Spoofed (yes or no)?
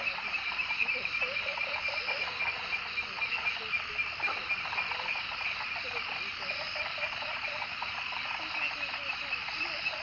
no